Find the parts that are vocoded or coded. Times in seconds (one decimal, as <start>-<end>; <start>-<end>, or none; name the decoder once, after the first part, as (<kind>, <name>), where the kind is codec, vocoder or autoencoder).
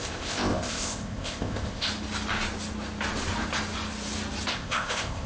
0.0-1.9 (codec, ZipCodec); 4.5-5.3